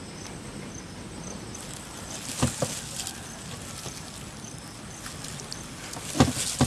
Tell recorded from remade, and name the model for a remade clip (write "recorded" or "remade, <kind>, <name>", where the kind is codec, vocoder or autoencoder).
recorded